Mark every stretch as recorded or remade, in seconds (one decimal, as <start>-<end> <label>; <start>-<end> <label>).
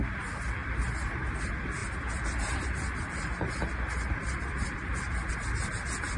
0.0-0.6 recorded; 0.6-1.4 remade; 1.4-6.2 recorded